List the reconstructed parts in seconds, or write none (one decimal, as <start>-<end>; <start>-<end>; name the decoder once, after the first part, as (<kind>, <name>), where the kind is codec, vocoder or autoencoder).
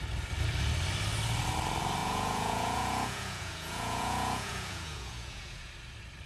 2.0-5.7 (vocoder, Vocos)